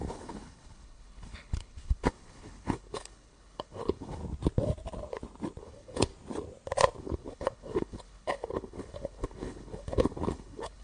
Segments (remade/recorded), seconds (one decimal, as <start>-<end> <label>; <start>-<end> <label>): 0.0-4.2 remade; 4.2-5.6 recorded; 5.6-6.1 remade; 6.1-7.0 recorded; 7.0-10.8 remade